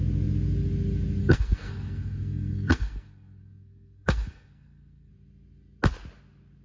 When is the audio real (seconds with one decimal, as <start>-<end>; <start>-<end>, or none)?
0.0-1.2; 5.1-6.6